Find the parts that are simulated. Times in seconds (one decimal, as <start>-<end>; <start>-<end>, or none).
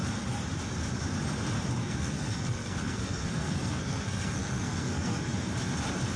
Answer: 1.8-5.5